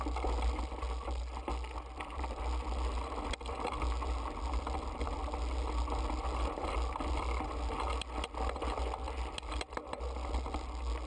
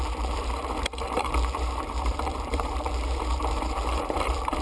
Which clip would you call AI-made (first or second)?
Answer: second